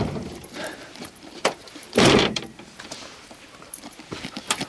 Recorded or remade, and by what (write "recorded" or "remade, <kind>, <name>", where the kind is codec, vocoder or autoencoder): remade, vocoder, BigVGAN v2